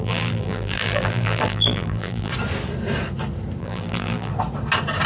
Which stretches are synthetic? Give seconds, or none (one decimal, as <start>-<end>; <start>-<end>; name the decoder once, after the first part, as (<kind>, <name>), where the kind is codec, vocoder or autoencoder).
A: 0.0-2.3 (vocoder, BigVGAN v2); 3.6-4.3